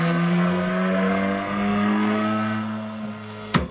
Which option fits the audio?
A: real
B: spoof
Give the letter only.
B